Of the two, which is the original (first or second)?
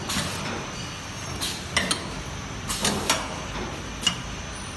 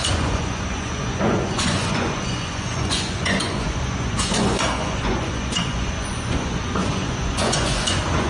first